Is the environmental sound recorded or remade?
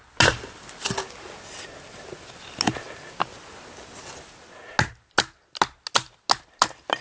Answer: recorded